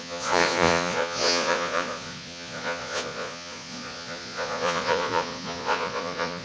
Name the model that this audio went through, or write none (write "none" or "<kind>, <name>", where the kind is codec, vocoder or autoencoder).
vocoder, Vocos